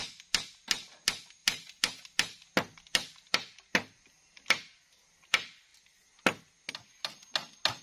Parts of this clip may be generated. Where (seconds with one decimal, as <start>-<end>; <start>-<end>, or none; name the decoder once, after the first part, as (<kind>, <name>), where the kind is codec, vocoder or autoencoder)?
none